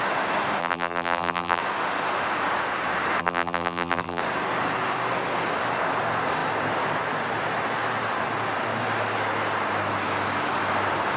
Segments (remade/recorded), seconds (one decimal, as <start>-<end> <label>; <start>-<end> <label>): 0.0-0.6 recorded; 0.6-1.6 remade; 1.6-3.2 recorded; 3.2-4.2 remade; 4.2-11.2 recorded